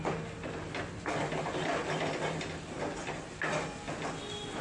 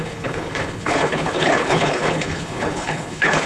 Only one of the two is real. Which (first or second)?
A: first